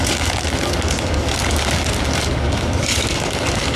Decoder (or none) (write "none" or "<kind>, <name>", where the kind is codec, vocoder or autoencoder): codec, DAC